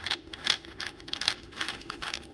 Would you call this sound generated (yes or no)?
yes